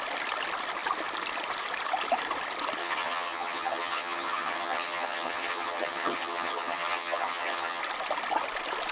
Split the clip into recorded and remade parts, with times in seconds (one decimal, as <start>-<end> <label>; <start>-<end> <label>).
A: 0.0-2.8 recorded; 2.8-7.8 remade; 7.8-8.9 recorded